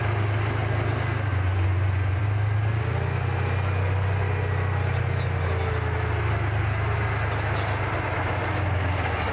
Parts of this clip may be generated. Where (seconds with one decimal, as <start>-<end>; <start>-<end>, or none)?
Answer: 1.3-2.2